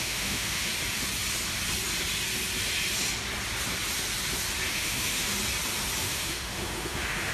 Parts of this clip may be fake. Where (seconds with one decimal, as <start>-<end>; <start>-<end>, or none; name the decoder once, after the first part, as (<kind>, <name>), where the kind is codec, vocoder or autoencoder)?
0.0-0.7 (autoencoder, DAC-VAE); 4.7-5.3; 6.0-7.3